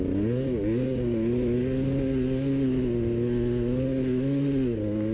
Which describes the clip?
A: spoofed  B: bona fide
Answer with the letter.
B